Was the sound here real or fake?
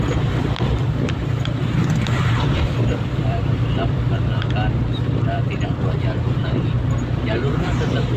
fake